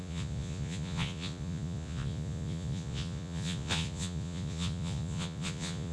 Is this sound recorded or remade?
remade